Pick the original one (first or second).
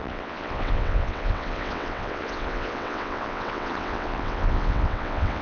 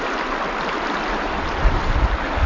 second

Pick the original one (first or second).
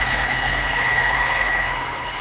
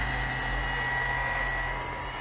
second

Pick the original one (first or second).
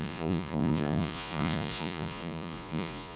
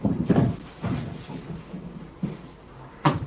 second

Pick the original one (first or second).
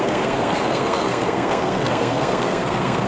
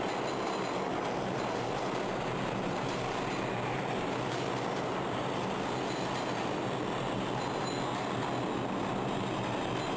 second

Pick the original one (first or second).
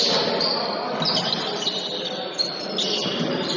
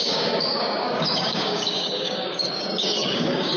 first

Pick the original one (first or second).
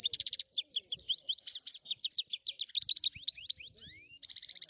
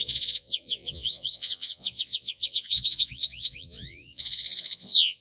first